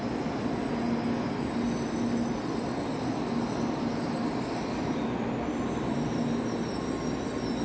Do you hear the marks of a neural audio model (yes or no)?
no